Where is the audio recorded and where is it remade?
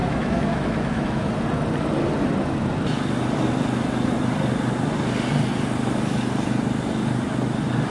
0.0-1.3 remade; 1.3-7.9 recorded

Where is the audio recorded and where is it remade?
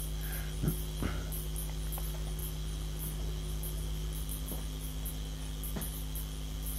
0.0-6.8 recorded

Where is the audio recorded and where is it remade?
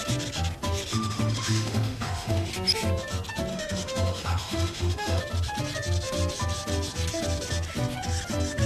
0.0-0.9 recorded; 0.9-2.5 remade; 2.5-3.5 recorded; 3.5-5.2 remade; 5.2-8.7 recorded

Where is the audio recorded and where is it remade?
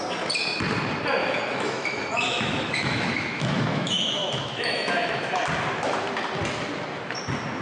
0.0-1.2 recorded; 1.2-5.4 remade; 5.4-7.6 recorded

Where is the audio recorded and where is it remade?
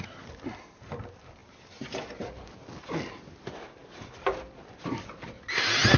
0.0-6.0 recorded